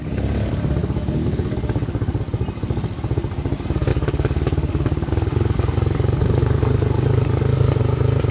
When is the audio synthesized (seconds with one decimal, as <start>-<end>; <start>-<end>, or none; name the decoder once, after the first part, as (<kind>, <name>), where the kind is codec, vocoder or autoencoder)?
0.8-2.2 (codec, DAC); 3.9-7.8